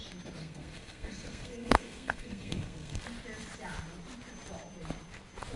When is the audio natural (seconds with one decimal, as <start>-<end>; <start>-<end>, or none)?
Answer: 0.0-0.4; 3.0-5.6